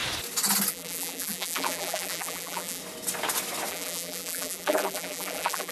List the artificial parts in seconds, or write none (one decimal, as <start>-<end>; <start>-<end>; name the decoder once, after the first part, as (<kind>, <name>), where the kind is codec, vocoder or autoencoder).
0.7-2.8 (vocoder, BigVGAN v2); 3.7-5.7